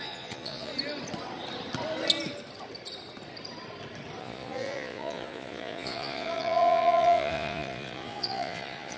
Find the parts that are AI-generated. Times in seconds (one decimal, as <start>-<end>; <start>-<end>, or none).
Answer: 0.0-0.7; 4.2-9.0

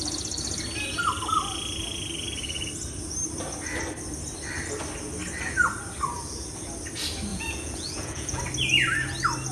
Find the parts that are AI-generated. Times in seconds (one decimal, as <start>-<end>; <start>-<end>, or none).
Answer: 7.3-8.4

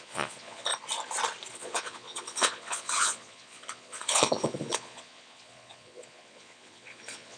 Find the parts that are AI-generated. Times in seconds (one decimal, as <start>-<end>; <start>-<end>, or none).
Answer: 0.0-0.7; 1.5-7.4

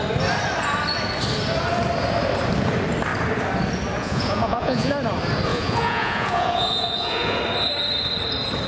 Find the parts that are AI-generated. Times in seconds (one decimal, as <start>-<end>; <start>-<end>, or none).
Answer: 4.0-4.9; 5.5-7.4

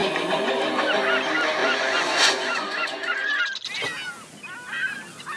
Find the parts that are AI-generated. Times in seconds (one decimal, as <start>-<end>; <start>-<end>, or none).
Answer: 0.0-0.5; 1.6-3.4